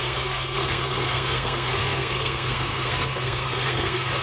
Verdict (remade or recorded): remade